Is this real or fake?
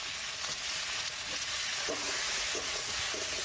fake